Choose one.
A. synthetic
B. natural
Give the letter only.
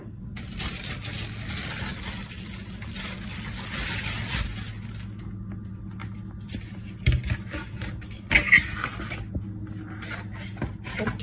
B